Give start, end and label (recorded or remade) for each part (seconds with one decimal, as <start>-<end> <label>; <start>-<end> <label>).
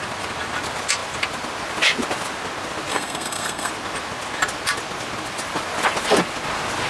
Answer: 0.0-2.9 recorded; 2.9-3.7 remade; 3.7-6.9 recorded